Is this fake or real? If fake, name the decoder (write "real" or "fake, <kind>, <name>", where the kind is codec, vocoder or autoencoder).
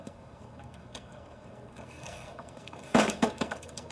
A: fake, codec, SNAC